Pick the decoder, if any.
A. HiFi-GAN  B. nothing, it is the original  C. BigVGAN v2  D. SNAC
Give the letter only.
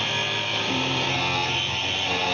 B